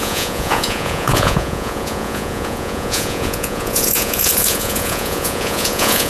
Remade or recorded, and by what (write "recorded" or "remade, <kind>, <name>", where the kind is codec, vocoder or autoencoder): remade, vocoder, Vocos